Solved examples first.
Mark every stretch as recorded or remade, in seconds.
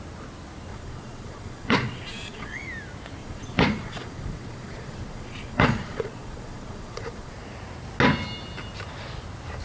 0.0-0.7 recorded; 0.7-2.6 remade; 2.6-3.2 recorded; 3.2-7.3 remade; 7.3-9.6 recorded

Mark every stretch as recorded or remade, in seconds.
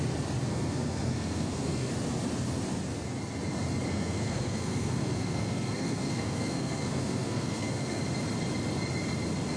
0.0-0.5 recorded; 0.5-1.9 remade; 1.9-3.9 recorded; 3.9-8.0 remade; 8.0-9.6 recorded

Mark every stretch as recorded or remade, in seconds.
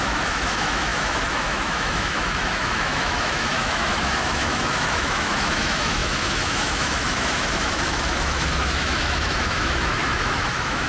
0.0-10.9 remade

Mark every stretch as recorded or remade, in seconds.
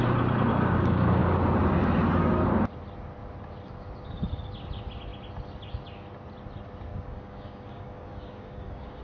0.0-0.5 recorded; 0.5-1.2 remade; 1.2-6.9 recorded; 6.9-9.0 remade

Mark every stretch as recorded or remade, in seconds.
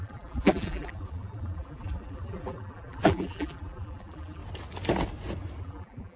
0.0-4.4 remade; 4.4-5.6 recorded; 5.6-6.2 remade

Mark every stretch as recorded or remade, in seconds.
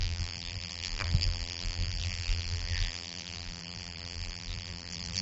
0.0-5.2 remade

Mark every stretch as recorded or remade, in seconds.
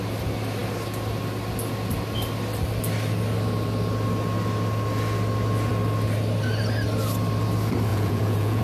0.0-7.9 recorded; 7.9-8.6 remade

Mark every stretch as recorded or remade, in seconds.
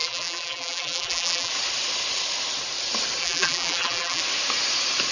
0.0-1.5 remade; 1.5-3.2 recorded; 3.2-4.2 remade; 4.2-5.1 recorded